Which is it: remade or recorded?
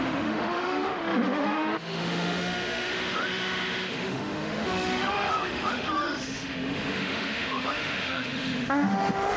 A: remade